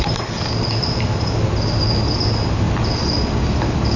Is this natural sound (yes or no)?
yes